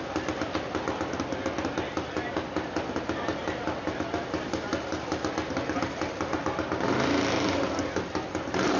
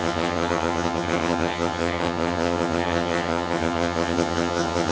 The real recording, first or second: first